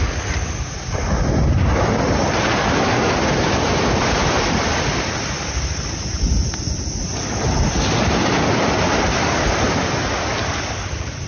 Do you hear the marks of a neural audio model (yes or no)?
no